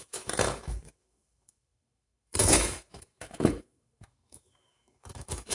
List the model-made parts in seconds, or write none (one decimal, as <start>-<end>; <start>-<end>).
0.0-5.5